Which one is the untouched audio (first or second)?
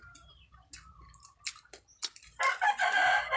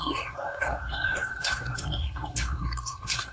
first